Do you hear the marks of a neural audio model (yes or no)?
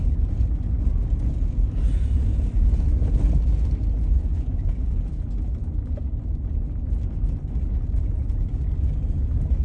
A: no